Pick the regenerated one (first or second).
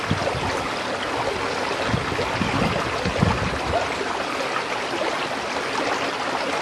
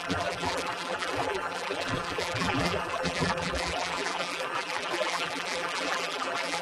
second